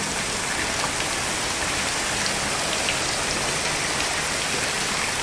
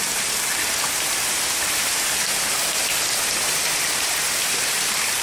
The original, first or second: first